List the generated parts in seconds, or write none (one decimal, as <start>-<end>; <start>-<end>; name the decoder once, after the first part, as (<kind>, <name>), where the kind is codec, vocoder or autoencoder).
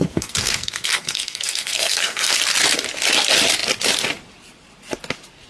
0.0-2.3 (codec, SNAC)